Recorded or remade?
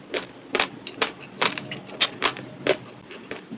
recorded